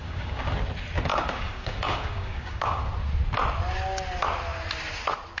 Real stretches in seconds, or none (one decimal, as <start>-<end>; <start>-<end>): 0.5-1.1; 2.9-5.4